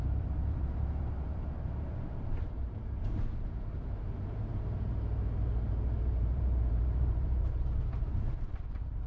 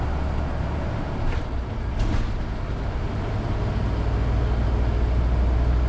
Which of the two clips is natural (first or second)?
second